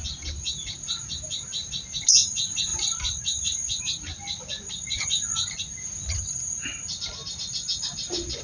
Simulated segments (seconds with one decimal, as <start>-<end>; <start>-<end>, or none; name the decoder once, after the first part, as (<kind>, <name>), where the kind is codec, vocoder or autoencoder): 2.7-3.8 (vocoder, BigVGAN v2)